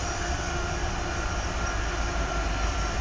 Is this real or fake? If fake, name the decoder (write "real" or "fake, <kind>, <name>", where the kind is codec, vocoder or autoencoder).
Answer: real